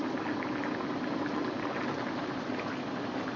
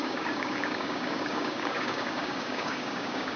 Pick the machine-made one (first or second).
second